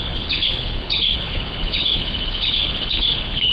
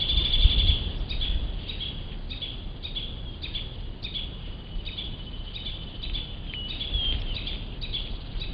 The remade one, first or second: first